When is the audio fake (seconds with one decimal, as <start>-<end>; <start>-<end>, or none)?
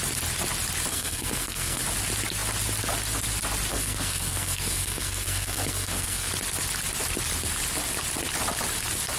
0.9-1.8; 3.7-6.3